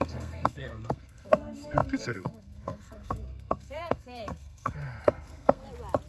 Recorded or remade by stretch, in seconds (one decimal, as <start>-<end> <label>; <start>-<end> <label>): 0.0-5.6 remade; 5.6-6.1 recorded